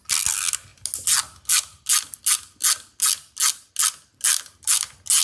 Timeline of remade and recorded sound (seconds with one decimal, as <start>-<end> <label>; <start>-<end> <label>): 0.0-5.2 recorded